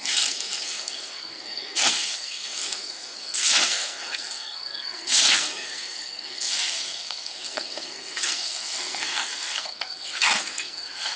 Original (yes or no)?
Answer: no